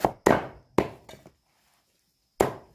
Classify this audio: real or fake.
real